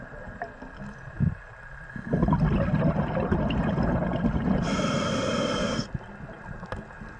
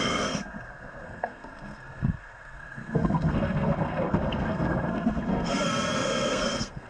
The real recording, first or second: first